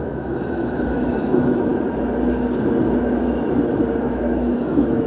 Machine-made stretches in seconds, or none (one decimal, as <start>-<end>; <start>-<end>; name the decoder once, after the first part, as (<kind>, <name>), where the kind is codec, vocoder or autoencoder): 0.0-1.7 (autoencoder, DAC-VAE); 4.0-5.1